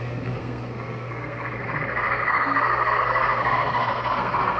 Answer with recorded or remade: remade